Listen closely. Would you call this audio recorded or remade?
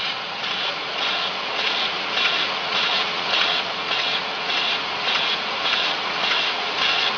remade